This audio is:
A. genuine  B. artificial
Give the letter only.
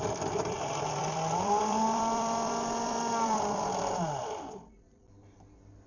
B